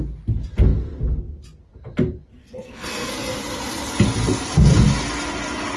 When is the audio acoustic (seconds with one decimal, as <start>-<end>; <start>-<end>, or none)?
0.0-2.4; 3.1-5.8